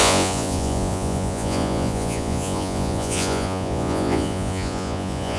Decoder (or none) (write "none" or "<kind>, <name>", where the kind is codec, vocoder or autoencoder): vocoder, Vocos